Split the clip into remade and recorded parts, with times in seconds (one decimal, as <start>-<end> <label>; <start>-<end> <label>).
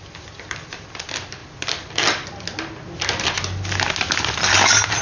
0.0-5.0 recorded